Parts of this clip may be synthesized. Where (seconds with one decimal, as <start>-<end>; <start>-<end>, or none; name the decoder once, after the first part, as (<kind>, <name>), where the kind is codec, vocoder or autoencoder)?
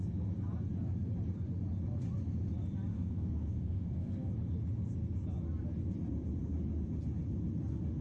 2.9-4.3 (codec, SNAC)